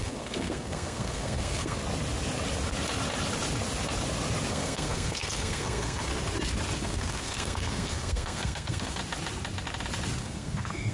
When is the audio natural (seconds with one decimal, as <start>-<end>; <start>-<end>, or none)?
1.8-4.5; 6.1-6.8; 9.0-10.2